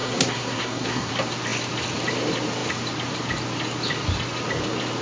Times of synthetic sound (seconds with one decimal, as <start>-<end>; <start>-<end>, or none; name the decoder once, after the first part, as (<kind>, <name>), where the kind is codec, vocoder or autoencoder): 0.0-1.1 (codec, SNAC)